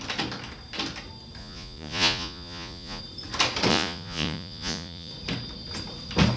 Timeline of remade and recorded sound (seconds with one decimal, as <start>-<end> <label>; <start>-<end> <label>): 0.0-1.4 recorded; 1.4-3.0 remade; 3.0-3.7 recorded; 3.7-5.1 remade; 5.1-6.4 recorded